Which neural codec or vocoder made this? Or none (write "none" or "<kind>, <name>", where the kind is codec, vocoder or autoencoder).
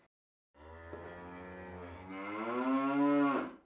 none